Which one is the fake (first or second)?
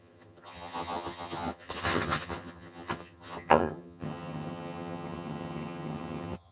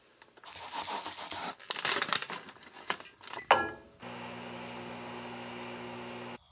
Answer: first